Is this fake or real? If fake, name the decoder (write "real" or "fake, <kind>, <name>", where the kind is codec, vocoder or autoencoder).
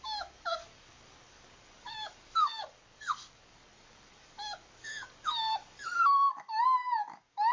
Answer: fake, codec, DAC